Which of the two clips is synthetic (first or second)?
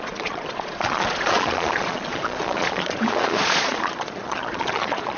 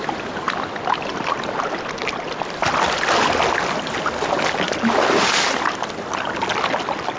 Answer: first